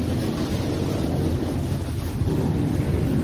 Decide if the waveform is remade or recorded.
recorded